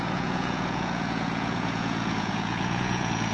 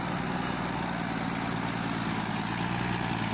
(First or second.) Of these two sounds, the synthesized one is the first